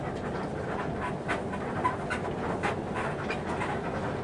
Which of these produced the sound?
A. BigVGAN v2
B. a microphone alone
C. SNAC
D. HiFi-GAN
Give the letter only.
B